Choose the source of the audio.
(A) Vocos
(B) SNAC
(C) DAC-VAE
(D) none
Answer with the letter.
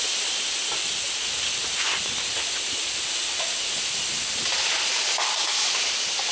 D